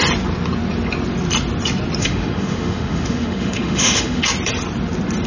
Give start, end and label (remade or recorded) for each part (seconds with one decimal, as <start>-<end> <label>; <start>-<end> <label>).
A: 0.0-2.0 recorded; 2.0-4.2 remade; 4.2-5.3 recorded